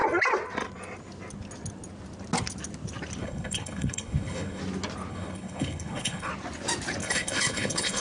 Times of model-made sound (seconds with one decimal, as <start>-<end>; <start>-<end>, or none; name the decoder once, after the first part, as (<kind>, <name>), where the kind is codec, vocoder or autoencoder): 3.2-4.6 (codec, HILCodec); 5.1-6.3; 7.0-8.0